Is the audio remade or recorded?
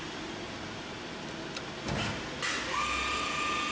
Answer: recorded